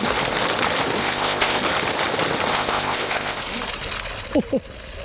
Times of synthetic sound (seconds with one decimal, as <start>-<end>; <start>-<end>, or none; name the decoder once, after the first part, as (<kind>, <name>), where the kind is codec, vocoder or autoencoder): 1.0-1.6 (codec, ZipCodec); 2.5-3.4